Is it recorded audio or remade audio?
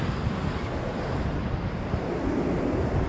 recorded